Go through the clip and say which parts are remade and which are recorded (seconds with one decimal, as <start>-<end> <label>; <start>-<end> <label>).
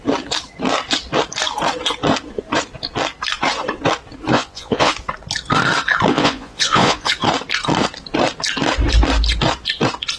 0.0-4.3 recorded; 4.3-4.9 remade; 4.9-6.1 recorded; 6.1-7.1 remade; 7.1-10.2 recorded